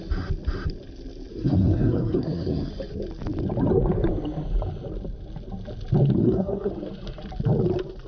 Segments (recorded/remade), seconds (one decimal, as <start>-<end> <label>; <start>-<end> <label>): 0.0-1.3 recorded; 1.3-2.7 remade; 2.7-6.2 recorded; 6.2-6.7 remade; 6.7-8.1 recorded

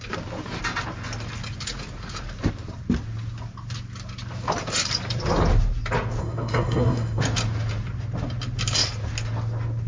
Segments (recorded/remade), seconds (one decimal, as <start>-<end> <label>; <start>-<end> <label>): 0.0-6.2 recorded; 6.2-7.2 remade; 7.2-9.9 recorded

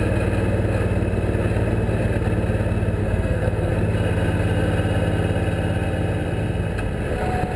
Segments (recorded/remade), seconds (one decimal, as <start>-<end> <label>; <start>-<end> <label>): 0.0-3.0 recorded; 3.0-3.7 remade; 3.7-7.6 recorded

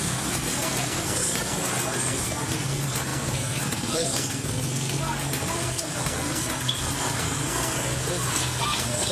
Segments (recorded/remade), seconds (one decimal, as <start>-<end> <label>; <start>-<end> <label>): 0.0-9.1 remade

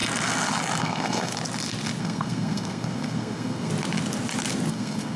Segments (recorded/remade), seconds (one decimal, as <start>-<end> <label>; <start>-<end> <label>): 0.0-0.8 recorded; 0.8-1.3 remade; 1.3-2.0 recorded; 2.0-3.7 remade; 3.7-4.7 recorded; 4.7-5.2 remade

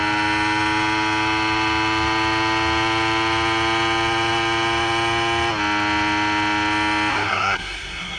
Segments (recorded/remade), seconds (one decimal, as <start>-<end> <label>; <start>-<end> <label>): 0.0-7.1 recorded; 7.1-8.2 remade

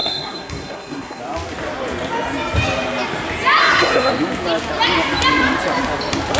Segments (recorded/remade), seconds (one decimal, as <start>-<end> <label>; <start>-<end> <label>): 0.0-1.2 remade; 1.2-3.6 recorded; 3.6-4.1 remade; 4.1-6.4 recorded

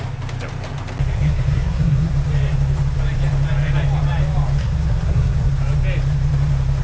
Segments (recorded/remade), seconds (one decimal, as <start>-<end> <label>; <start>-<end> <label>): 0.0-1.1 recorded; 1.1-2.1 remade; 2.1-4.6 recorded; 4.6-5.5 remade; 5.5-6.8 recorded